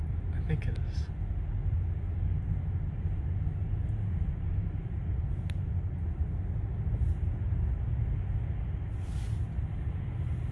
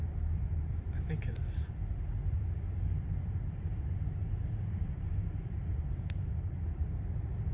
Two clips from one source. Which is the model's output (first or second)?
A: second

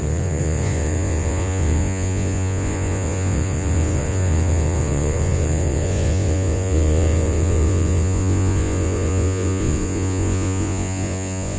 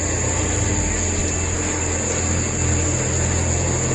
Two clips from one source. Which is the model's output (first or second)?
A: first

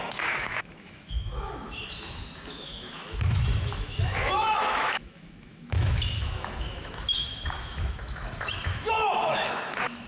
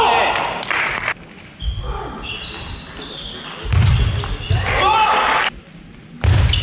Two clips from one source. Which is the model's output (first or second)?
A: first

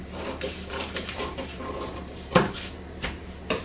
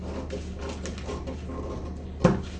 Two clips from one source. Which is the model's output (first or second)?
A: first